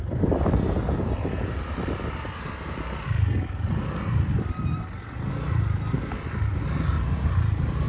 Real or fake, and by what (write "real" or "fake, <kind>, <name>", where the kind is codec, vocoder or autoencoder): real